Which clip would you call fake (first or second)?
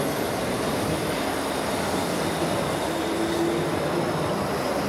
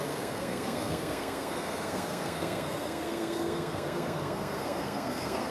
second